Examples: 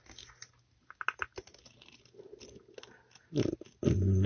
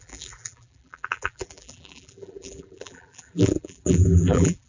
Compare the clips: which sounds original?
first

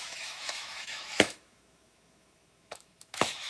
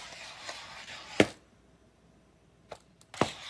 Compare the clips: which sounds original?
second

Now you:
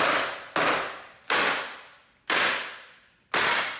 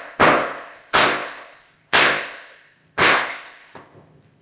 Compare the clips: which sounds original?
first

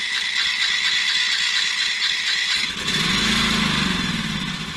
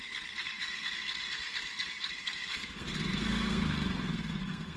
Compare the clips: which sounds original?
first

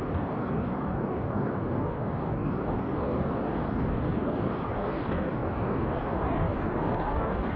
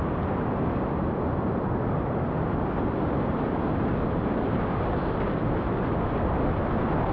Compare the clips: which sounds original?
second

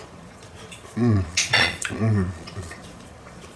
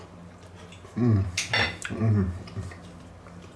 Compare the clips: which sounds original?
second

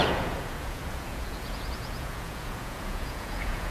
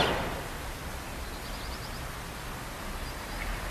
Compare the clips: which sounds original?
second